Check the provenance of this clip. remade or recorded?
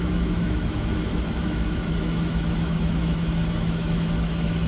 remade